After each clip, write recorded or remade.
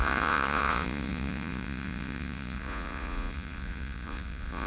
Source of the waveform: remade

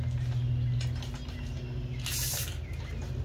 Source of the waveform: recorded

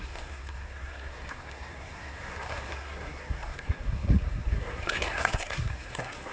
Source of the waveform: remade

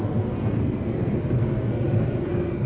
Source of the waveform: remade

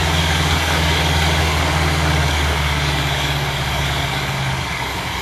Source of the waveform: remade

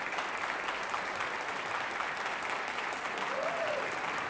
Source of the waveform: recorded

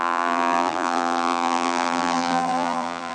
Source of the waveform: remade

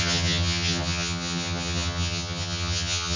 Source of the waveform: remade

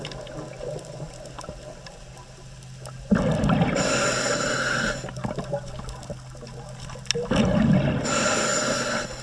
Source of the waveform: recorded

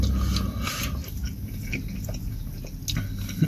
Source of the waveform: recorded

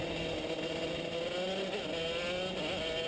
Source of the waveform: recorded